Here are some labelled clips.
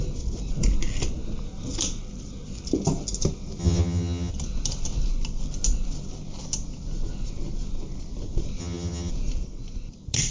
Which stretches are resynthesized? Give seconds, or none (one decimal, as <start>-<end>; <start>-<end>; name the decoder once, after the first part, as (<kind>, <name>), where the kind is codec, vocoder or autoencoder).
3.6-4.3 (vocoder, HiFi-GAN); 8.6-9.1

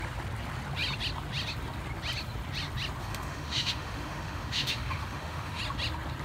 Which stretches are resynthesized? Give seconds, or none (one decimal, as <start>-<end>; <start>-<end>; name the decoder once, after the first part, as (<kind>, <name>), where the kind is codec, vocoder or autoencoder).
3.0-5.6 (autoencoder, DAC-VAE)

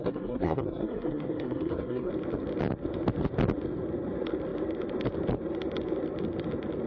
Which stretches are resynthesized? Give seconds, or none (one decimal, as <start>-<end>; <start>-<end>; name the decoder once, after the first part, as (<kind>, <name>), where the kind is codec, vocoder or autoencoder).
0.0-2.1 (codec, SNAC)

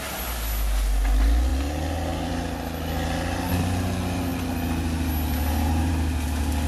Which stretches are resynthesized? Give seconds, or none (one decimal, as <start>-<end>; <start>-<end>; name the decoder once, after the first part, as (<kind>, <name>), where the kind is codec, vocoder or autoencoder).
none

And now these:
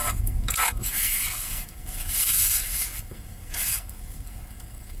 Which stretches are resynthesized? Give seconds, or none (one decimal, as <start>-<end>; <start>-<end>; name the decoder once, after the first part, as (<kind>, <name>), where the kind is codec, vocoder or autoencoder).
0.0-5.0 (codec, SNAC)